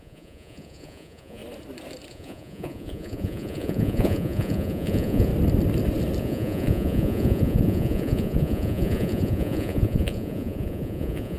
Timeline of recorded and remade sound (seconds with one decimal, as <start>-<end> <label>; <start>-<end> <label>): 0.0-1.4 remade; 1.4-2.1 recorded; 2.1-5.3 remade; 5.3-6.2 recorded; 6.2-11.4 remade